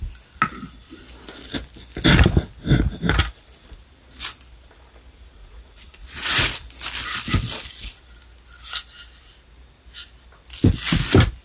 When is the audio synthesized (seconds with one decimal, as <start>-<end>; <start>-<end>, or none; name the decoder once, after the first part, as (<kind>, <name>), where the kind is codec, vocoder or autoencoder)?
5.3-6.5 (vocoder, Vocos)